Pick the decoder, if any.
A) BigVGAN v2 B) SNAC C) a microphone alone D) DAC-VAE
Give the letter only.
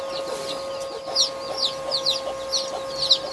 C